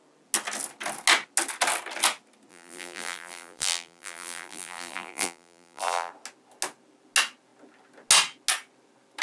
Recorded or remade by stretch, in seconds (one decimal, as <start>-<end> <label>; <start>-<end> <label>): 0.0-2.5 recorded; 2.5-6.1 remade; 6.1-9.2 recorded